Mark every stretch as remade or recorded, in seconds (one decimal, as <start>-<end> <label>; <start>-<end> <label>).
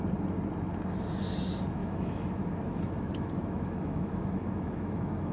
0.0-1.8 recorded; 1.8-5.3 remade